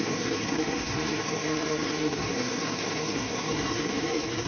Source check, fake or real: fake